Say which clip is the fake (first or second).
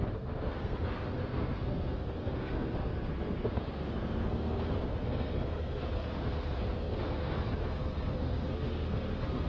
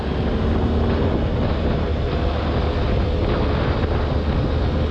first